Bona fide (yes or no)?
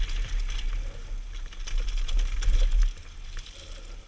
yes